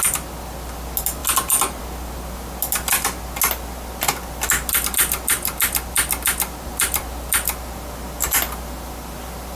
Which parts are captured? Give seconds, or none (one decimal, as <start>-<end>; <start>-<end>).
0.0-9.5